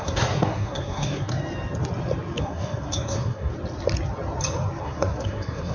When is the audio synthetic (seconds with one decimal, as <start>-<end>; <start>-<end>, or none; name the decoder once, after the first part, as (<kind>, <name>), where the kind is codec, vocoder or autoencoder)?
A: 0.0-1.3 (codec, SNAC); 2.4-3.5; 4.8-5.7

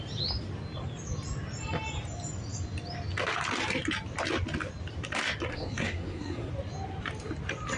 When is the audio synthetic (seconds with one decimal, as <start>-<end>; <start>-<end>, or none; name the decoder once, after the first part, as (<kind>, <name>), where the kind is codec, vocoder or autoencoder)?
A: 5.5-6.5 (codec, SNAC)

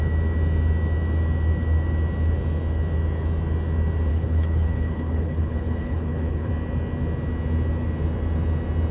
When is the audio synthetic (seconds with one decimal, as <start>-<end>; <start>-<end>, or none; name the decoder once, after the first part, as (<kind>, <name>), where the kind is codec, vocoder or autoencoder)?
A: 4.1-6.5 (codec, HILCodec)

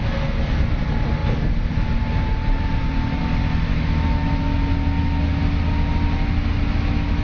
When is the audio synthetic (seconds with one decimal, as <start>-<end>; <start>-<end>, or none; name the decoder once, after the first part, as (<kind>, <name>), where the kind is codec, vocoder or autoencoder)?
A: 3.7-4.5 (autoencoder, DAC-VAE)